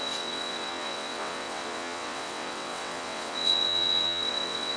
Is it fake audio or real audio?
fake